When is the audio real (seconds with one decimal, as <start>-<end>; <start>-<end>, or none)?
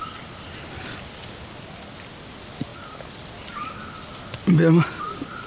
0.0-5.5